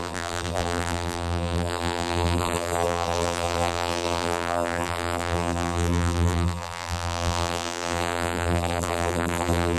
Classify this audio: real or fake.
fake